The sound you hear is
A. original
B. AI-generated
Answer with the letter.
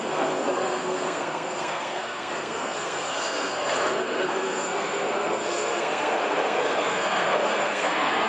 B